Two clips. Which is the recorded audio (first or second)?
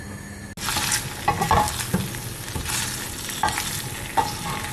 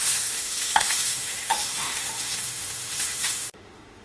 first